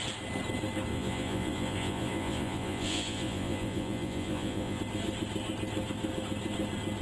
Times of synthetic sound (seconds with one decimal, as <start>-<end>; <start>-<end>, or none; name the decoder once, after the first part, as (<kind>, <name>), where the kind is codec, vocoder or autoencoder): 0.9-4.8 (vocoder, Vocos)